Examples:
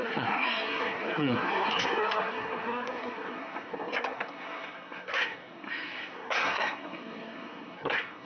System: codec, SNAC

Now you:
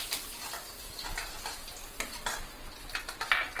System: none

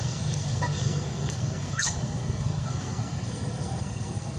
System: codec, SNAC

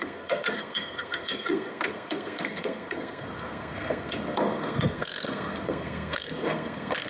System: codec, SNAC